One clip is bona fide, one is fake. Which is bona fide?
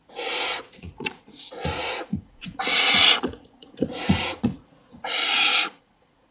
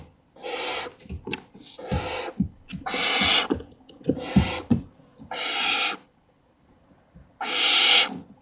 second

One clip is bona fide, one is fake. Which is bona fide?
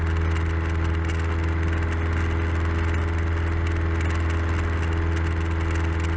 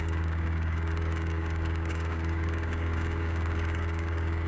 first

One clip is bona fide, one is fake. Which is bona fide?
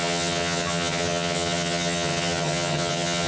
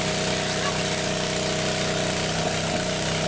second